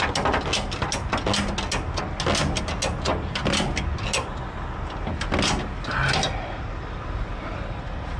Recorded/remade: recorded